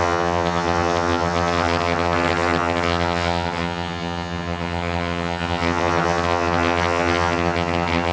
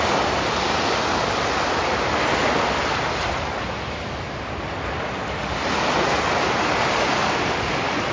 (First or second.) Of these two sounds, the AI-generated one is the first